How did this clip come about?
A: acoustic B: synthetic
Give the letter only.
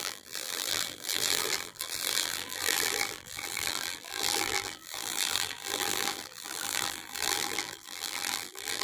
B